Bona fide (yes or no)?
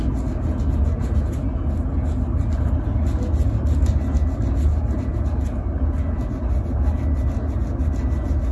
yes